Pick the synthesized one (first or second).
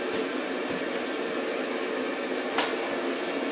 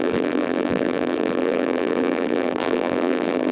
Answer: second